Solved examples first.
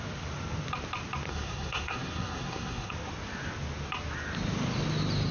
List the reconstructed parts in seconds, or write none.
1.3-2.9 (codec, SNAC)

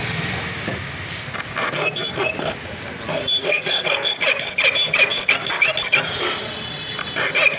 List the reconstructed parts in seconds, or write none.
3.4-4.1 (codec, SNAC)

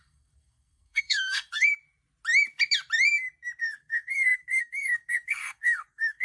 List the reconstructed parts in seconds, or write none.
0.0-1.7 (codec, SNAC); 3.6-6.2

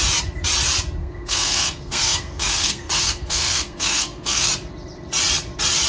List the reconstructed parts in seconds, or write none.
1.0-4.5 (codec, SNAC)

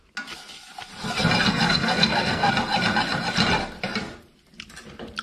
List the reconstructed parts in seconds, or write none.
1.5-2.5 (codec, SNAC)

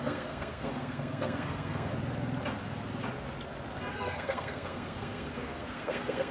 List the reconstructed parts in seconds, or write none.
0.0-1.9 (codec, SNAC); 3.9-6.3

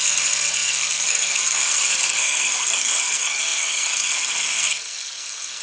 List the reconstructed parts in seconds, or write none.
0.0-5.6 (codec, SNAC)

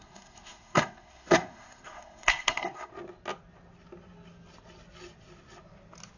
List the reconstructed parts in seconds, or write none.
0.0-2.9 (codec, SNAC)